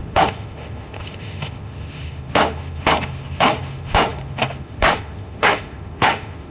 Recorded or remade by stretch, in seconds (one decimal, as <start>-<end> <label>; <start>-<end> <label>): 0.0-6.5 remade